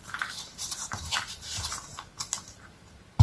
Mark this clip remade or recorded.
remade